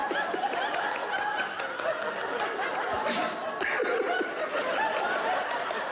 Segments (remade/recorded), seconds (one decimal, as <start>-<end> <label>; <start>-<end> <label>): 0.0-5.9 recorded